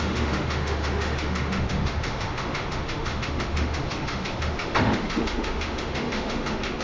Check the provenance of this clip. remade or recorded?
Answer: remade